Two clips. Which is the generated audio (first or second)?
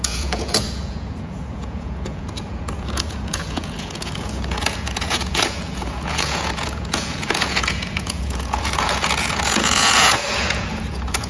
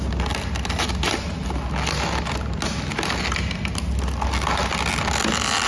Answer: first